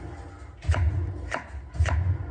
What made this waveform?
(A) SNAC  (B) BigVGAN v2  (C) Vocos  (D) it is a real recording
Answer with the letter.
D